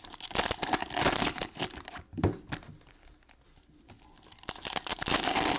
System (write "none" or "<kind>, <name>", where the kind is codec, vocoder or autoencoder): none